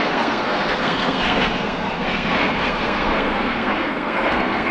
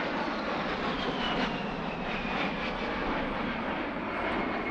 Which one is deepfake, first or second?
first